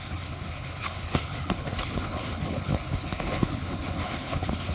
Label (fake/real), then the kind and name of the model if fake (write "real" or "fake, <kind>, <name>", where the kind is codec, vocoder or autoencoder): fake, codec, HILCodec